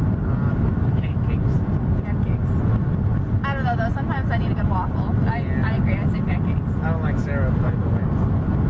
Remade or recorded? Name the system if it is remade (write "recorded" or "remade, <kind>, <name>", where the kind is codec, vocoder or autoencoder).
recorded